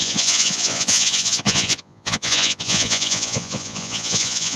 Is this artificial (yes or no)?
yes